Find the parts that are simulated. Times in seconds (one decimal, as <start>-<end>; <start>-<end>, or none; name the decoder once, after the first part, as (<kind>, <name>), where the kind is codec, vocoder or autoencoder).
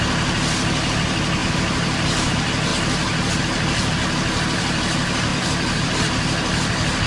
1.4-2.3 (vocoder, BigVGAN v2); 5.3-5.9